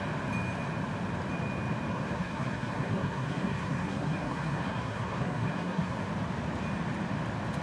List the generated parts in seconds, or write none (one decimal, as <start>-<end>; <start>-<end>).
1.9-6.1

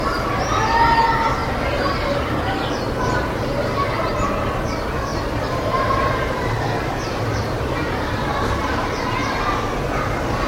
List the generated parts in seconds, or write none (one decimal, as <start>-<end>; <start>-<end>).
1.4-2.4; 5.1-8.9

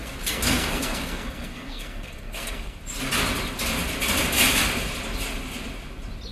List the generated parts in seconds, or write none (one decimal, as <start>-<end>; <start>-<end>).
0.0-2.8

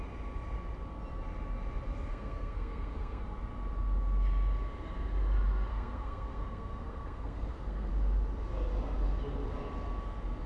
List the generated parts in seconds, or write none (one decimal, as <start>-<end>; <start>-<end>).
2.1-3.2; 5.7-7.9

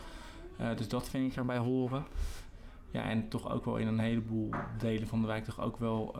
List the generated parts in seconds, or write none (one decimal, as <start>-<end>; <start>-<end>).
1.1-2.4

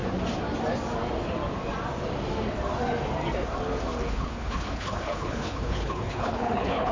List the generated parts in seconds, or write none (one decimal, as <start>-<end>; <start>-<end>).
4.1-6.9

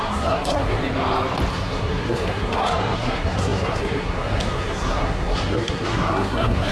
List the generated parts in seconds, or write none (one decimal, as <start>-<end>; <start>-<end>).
0.0-0.8; 1.5-6.7

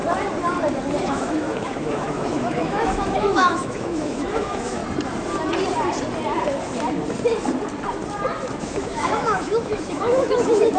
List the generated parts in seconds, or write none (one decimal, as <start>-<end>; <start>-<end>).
1.0-4.8; 8.6-10.8